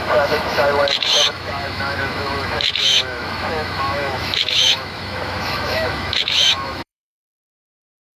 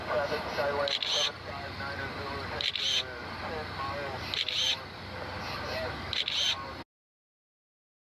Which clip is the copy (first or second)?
first